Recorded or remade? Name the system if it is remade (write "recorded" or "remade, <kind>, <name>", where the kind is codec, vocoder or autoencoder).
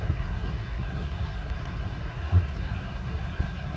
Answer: remade, codec, SNAC